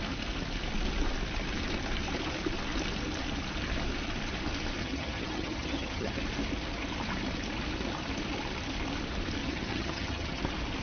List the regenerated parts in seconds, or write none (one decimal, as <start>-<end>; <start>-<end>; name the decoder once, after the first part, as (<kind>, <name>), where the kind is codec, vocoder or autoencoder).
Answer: 4.8-6.2 (vocoder, HiFi-GAN); 9.4-10.4

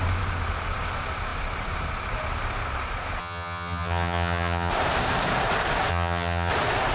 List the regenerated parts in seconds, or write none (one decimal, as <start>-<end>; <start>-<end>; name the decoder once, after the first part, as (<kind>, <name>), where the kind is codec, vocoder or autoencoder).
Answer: 3.2-4.7 (vocoder, HiFi-GAN); 5.9-6.5

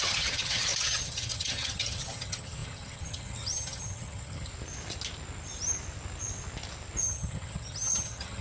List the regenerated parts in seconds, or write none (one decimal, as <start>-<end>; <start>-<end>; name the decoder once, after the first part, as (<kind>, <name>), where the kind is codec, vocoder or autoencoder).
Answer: 0.0-4.5 (vocoder, HiFi-GAN); 7.0-8.4

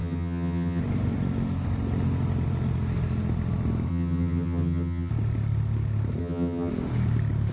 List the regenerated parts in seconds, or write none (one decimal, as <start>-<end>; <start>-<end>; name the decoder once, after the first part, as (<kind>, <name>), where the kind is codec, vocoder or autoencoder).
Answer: 0.0-0.8 (vocoder, HiFi-GAN); 3.9-5.1; 6.2-6.7

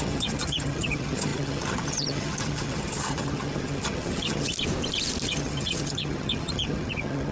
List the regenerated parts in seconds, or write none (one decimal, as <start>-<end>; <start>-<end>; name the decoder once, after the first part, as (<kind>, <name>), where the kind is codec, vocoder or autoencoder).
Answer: 0.0-4.5 (vocoder, HiFi-GAN); 5.3-7.3

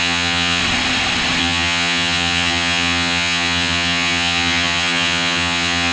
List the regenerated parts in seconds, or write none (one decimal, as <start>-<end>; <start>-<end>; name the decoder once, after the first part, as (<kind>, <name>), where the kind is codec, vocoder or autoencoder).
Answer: 0.0-0.6 (vocoder, HiFi-GAN); 1.4-5.9

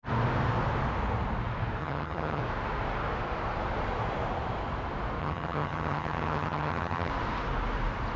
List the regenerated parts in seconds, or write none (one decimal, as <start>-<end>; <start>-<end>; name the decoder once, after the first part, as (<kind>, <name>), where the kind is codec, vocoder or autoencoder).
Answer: 1.8-2.4 (vocoder, HiFi-GAN); 5.2-7.1

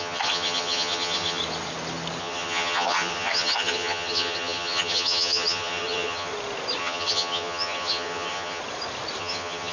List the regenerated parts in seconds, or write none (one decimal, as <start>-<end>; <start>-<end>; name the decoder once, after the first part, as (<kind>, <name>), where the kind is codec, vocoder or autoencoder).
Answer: 0.0-1.4 (vocoder, HiFi-GAN); 2.2-6.3; 6.8-8.6; 9.2-9.7